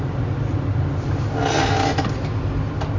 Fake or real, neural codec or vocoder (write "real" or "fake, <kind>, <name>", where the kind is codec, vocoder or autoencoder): real